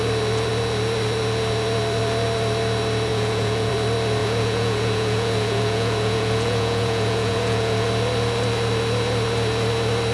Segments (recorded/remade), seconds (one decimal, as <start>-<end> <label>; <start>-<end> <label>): 0.0-3.1 recorded; 3.1-3.7 remade; 3.7-4.2 recorded; 4.2-7.9 remade; 7.9-10.1 recorded